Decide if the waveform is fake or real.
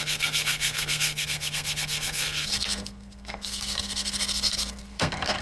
fake